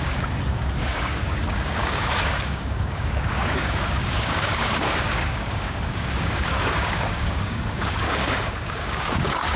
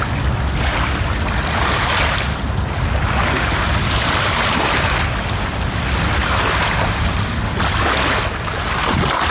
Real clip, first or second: second